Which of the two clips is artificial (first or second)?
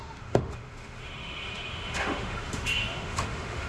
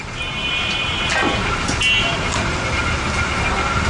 first